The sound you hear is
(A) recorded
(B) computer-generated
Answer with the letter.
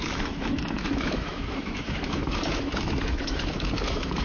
B